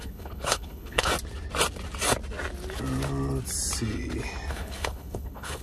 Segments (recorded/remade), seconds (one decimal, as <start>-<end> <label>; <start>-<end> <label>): 0.0-1.1 remade; 1.1-4.5 recorded; 4.5-5.6 remade